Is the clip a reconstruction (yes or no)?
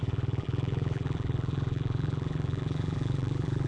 yes